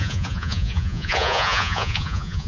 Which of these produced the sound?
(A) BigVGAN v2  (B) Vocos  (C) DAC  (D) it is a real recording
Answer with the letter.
B